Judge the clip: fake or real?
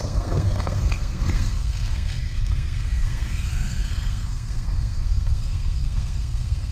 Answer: fake